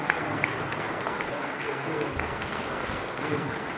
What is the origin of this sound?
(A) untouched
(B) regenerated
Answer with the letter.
B